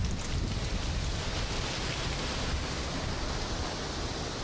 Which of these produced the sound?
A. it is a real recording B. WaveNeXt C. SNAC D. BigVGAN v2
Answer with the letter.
A